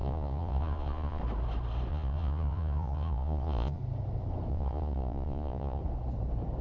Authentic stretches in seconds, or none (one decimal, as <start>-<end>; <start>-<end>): 1.2-1.9; 3.8-4.5; 5.8-6.6